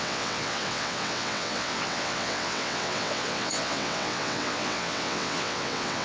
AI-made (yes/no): yes